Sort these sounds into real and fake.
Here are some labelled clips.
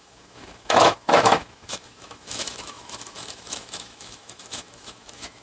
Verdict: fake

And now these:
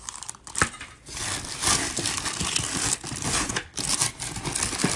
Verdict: real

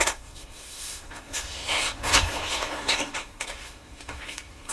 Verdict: fake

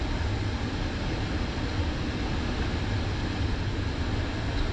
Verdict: real